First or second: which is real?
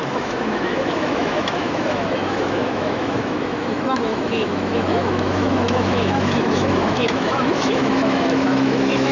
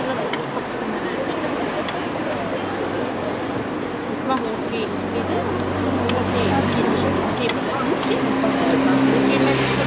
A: second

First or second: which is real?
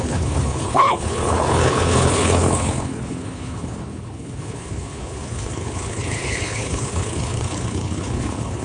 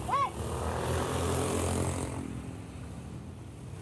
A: second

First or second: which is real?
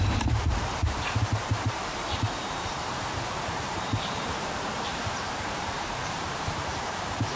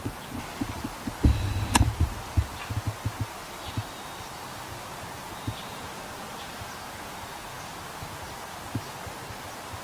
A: second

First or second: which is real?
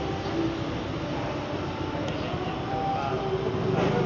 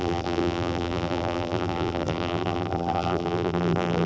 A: first